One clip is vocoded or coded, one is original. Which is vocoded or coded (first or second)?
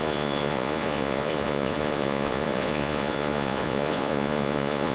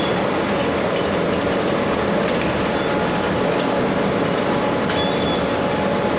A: first